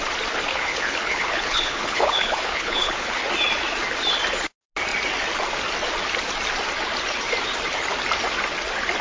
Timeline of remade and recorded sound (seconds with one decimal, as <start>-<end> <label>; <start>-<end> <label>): 0.0-0.5 recorded; 0.5-3.2 remade; 3.2-9.0 recorded